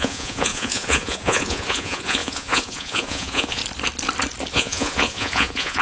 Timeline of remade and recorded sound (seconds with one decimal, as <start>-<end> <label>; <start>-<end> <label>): 0.0-3.6 remade; 3.6-4.5 recorded; 4.5-5.8 remade